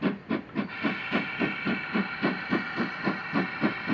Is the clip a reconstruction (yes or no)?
no